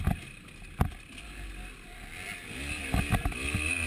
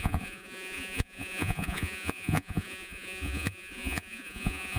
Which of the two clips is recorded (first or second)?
first